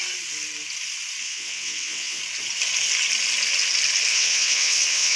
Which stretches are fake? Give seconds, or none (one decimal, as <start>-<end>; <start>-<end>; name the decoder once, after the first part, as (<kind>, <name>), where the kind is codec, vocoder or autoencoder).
1.2-2.2 (vocoder, WaveNeXt); 4.1-5.2